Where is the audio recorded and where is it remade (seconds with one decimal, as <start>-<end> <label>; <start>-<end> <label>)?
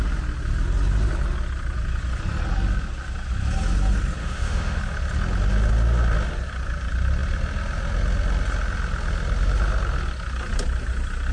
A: 0.0-4.2 recorded; 4.2-4.8 remade; 4.8-11.3 recorded